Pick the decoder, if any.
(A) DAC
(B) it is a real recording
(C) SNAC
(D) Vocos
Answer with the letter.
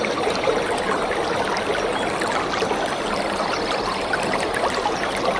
B